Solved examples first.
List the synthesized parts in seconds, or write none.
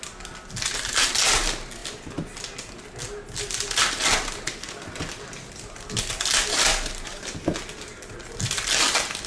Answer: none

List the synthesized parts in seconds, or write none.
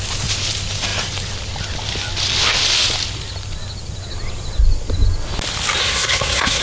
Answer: 5.8-6.6 (codec, SNAC)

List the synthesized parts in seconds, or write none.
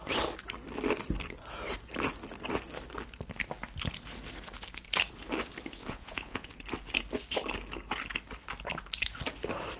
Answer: 5.8-6.5 (vocoder, Vocos)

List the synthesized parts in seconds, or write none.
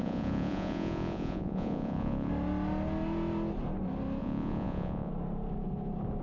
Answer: 0.0-2.3 (vocoder, Vocos); 4.2-5.1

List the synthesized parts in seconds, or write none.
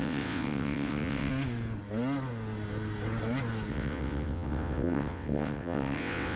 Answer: 0.0-1.3 (vocoder, WaveNeXt); 3.7-6.4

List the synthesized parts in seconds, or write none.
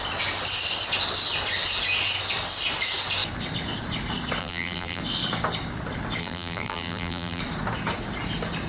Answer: 4.4-5.0 (vocoder, BigVGAN v2); 6.2-7.4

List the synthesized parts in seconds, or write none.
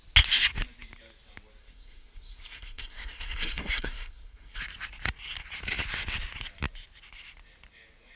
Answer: 1.6-4.6 (codec, SNAC)